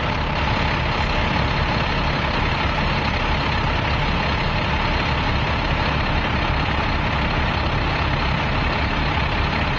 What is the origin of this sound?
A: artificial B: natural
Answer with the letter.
B